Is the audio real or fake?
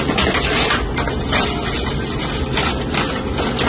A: real